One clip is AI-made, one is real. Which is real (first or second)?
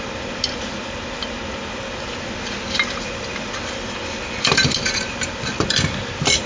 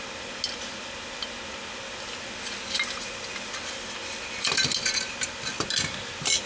second